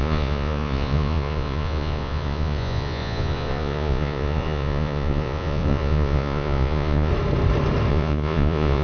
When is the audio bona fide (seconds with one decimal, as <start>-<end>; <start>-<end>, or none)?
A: 7.1-7.9